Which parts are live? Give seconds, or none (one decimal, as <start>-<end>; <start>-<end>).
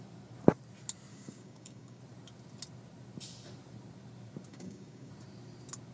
0.0-1.1; 2.0-4.5; 5.1-5.9